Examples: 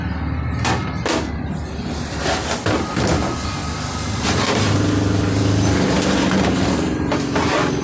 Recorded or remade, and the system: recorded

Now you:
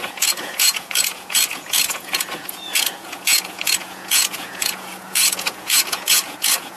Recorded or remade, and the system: remade, vocoder, Vocos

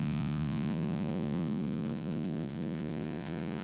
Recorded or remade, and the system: remade, vocoder, Vocos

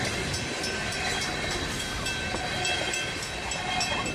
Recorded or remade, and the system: recorded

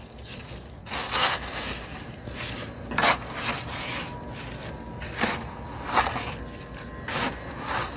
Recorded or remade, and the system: recorded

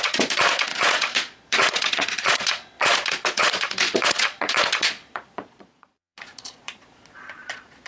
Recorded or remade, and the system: remade, vocoder, Vocos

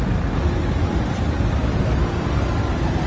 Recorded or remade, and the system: recorded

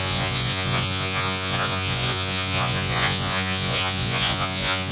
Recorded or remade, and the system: remade, vocoder, Vocos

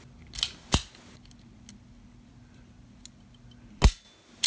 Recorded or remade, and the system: recorded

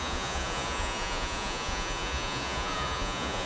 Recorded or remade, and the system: remade, vocoder, Vocos